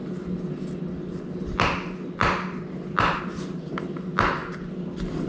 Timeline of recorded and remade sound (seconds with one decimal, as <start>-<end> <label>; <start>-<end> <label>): 0.0-5.3 recorded